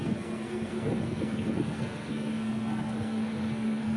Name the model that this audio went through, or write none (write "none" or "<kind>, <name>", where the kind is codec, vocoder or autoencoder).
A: codec, SNAC